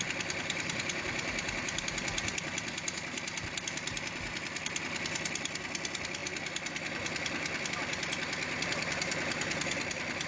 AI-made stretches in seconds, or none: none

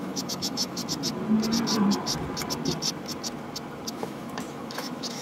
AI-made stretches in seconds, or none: 0.0-0.8 (autoencoder, DAC-VAE); 3.9-5.2

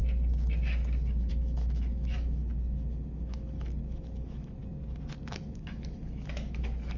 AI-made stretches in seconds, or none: 1.3-2.4 (autoencoder, DAC-VAE); 2.9-4.6; 5.2-7.0

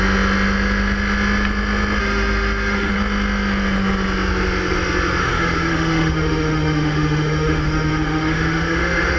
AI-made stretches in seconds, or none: 2.0-2.9 (autoencoder, DAC-VAE); 5.2-9.2